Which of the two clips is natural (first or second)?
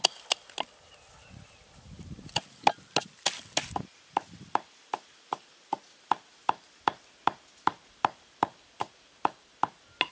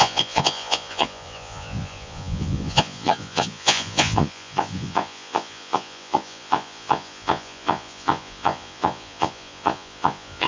first